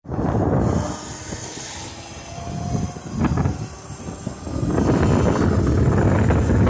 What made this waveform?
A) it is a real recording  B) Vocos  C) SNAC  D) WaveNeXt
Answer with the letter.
A